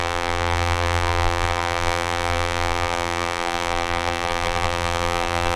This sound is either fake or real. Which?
fake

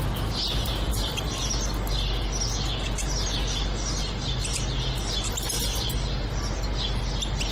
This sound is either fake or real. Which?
real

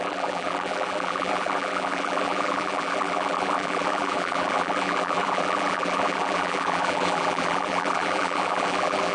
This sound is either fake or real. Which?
fake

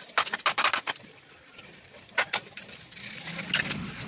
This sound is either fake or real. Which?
real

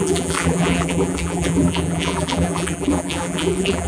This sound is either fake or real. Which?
fake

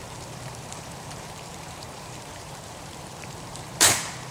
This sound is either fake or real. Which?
fake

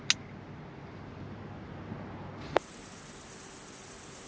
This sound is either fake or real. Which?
real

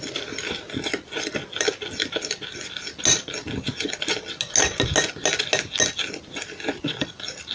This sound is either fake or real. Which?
real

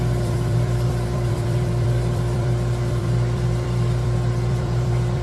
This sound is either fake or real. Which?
fake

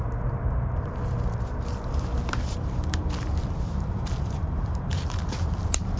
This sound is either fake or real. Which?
fake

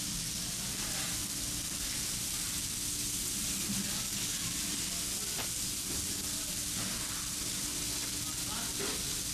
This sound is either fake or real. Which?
real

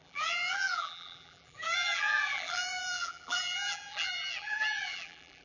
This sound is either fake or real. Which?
fake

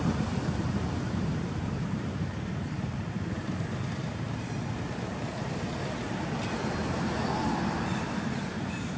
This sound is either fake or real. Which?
fake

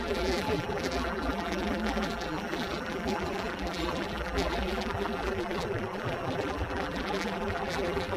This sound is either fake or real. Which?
fake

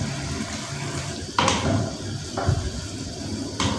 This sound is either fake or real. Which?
fake